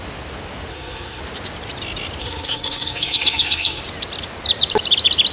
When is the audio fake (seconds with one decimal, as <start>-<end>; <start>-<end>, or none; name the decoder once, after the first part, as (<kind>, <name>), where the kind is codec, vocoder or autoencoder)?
0.7-1.2 (codec, SNAC); 2.2-3.8